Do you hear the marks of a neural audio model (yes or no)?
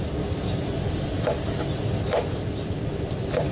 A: no